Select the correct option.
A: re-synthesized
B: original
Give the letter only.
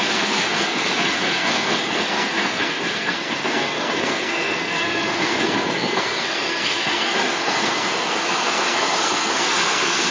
A